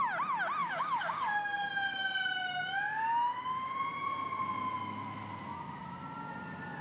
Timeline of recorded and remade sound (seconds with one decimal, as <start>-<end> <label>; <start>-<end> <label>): 0.0-0.6 recorded; 0.6-3.7 remade; 3.7-6.8 recorded